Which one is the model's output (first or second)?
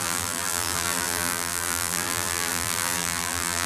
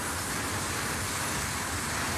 first